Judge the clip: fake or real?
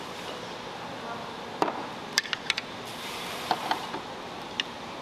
fake